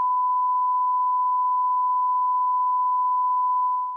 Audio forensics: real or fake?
real